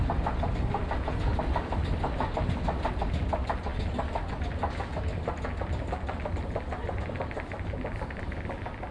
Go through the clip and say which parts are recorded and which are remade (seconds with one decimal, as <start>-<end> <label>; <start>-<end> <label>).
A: 0.0-8.9 recorded